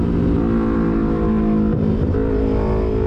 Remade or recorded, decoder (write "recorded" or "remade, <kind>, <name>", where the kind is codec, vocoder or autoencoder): recorded